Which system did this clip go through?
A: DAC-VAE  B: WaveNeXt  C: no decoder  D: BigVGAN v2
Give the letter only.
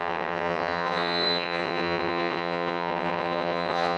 B